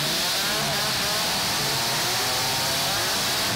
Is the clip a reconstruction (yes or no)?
no